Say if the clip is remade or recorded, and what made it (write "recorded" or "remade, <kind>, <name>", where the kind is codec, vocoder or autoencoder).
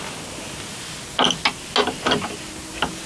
recorded